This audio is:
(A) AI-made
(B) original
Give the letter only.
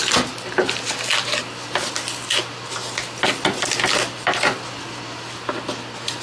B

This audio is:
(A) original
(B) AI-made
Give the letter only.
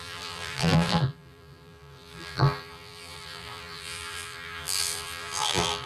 B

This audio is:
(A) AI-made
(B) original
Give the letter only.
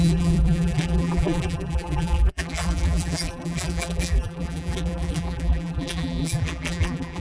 A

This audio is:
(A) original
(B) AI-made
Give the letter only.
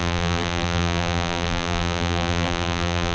B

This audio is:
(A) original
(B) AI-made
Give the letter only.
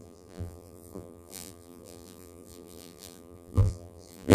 B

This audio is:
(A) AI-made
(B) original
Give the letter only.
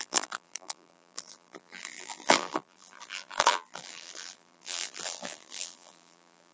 A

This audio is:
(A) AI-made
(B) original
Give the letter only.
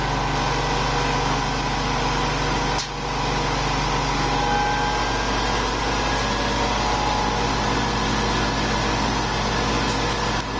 B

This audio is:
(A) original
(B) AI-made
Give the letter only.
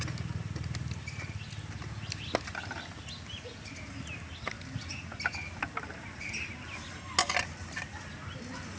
A